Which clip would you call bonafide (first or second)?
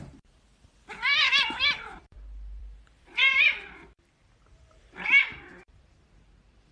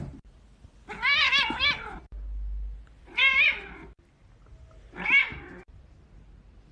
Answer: second